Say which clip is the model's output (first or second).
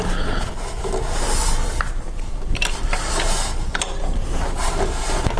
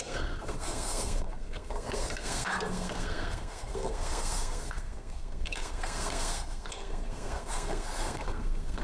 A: second